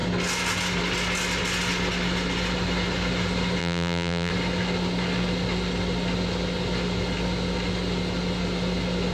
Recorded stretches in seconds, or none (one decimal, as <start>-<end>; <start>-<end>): 0.0-3.6; 4.3-9.1